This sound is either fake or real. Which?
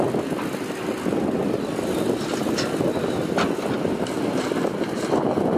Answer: real